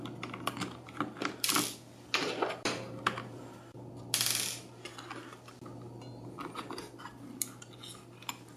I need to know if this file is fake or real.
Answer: real